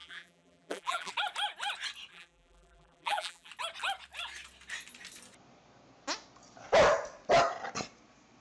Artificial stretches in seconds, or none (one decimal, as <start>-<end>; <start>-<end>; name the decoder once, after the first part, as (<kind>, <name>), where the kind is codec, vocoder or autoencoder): 0.0-1.1 (vocoder, BigVGAN v2); 2.1-3.5